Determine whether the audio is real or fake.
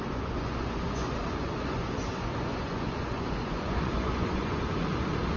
fake